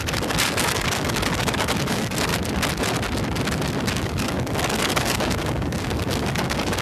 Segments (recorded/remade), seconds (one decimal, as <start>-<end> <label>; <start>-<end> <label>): 0.0-2.3 remade; 2.3-3.9 recorded; 3.9-6.8 remade

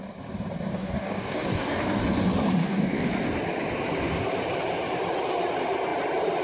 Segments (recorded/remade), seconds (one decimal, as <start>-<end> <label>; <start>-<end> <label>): 0.0-0.7 recorded; 0.7-2.0 remade; 2.0-2.6 recorded; 2.6-3.1 remade; 3.1-6.4 recorded